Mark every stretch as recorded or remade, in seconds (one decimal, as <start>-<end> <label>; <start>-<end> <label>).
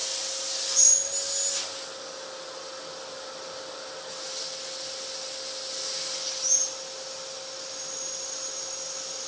0.0-9.3 recorded